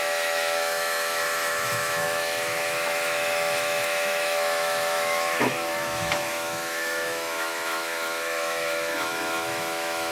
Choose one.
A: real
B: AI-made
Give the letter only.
B